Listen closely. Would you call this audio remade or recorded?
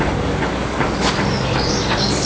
remade